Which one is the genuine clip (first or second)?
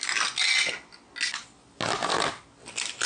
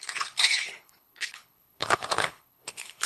first